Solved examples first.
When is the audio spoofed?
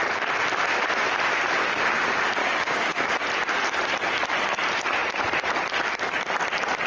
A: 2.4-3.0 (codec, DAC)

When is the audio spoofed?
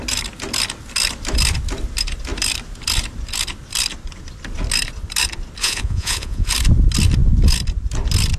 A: 5.6-6.5 (vocoder, Vocos)